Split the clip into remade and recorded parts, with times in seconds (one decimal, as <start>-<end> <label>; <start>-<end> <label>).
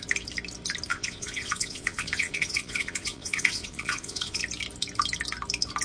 0.0-0.9 recorded; 0.9-4.4 remade; 4.4-5.8 recorded